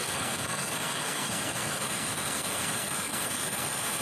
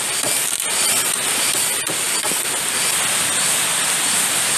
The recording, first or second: second